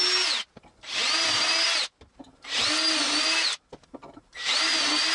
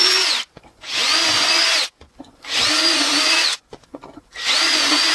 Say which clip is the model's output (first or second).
second